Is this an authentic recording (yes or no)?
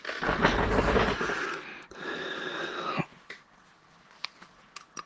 yes